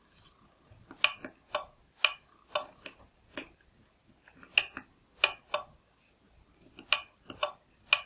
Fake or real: real